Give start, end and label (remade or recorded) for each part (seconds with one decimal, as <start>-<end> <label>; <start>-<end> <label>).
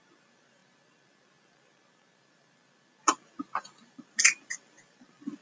0.0-4.2 recorded; 4.2-5.4 remade